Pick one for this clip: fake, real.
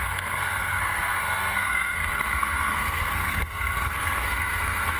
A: fake